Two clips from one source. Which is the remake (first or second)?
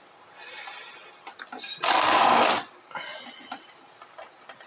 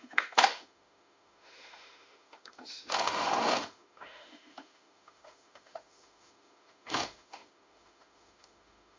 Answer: second